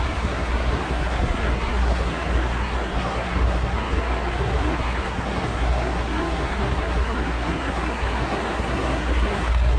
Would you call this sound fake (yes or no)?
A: yes